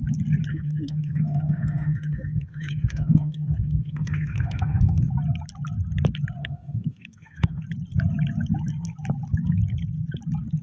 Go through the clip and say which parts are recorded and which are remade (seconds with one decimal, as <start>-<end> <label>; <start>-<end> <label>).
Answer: 0.0-0.5 recorded; 0.5-5.1 remade; 5.1-6.4 recorded; 6.4-7.6 remade; 7.6-10.6 recorded